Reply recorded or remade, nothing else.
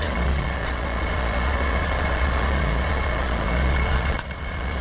remade